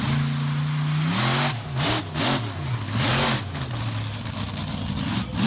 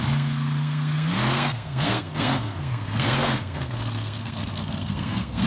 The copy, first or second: second